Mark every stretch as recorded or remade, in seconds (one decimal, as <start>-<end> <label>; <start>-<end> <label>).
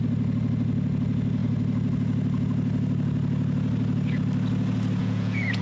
0.0-5.0 recorded; 5.0-5.6 remade